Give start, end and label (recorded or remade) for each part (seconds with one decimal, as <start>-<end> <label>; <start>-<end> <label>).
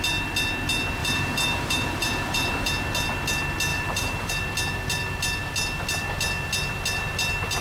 0.0-1.0 recorded; 1.0-2.7 remade; 2.7-3.7 recorded; 3.7-4.3 remade; 4.3-7.6 recorded